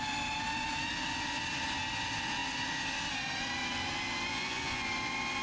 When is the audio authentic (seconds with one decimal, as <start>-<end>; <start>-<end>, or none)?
0.0-4.3; 4.9-5.4